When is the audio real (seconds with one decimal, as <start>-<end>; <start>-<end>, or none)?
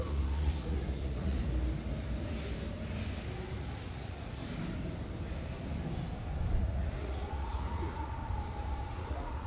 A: 1.4-3.6; 4.4-6.6; 8.2-8.9